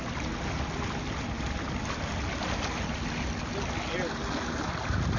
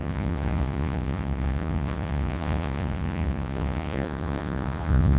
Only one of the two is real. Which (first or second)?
first